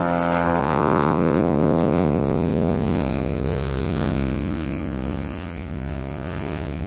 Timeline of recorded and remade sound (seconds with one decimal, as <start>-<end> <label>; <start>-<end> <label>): 0.0-0.6 recorded; 0.6-6.9 remade